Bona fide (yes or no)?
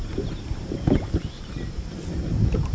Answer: yes